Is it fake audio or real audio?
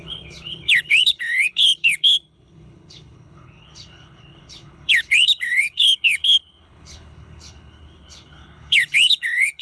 fake